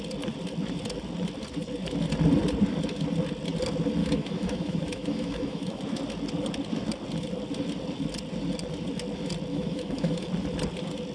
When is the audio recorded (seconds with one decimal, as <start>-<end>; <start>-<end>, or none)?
0.0-4.0; 5.8-9.5; 10.3-11.1